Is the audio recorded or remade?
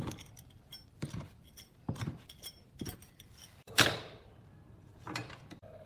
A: remade